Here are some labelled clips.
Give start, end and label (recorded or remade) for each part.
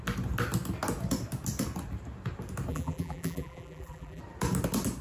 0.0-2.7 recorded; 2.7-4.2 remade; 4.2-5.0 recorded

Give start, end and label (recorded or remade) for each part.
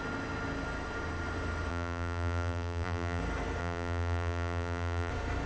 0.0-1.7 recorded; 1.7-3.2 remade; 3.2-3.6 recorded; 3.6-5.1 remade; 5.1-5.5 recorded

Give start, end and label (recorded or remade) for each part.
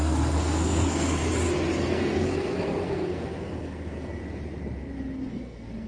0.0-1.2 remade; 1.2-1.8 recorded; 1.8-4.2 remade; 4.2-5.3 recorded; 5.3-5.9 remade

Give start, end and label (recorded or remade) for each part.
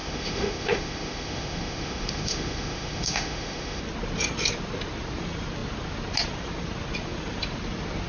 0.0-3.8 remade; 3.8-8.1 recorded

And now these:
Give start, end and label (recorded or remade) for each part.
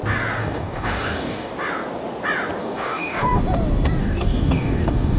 0.0-0.4 recorded; 0.4-1.5 remade; 1.5-2.6 recorded; 2.6-3.4 remade; 3.4-4.0 recorded; 4.0-5.2 remade